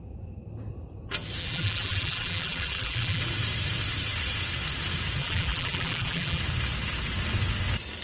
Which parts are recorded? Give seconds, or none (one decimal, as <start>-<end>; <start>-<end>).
0.0-1.4; 3.2-5.2; 6.4-8.0